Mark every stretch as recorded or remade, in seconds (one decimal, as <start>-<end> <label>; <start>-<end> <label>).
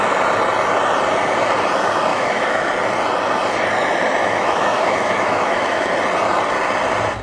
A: 0.0-2.1 recorded; 2.1-2.7 remade; 2.7-4.2 recorded; 4.2-5.9 remade; 5.9-7.2 recorded